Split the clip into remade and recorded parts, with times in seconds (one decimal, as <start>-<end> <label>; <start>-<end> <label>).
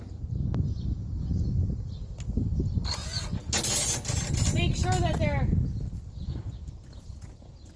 0.0-7.8 recorded